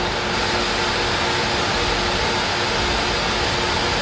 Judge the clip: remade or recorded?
recorded